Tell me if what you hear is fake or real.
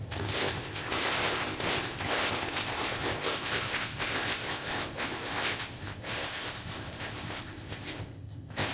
fake